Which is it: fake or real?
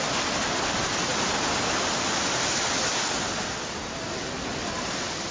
fake